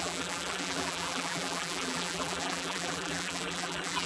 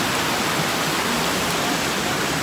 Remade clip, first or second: first